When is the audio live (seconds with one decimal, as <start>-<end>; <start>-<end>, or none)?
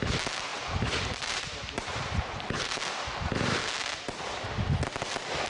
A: 0.0-0.5; 2.8-5.5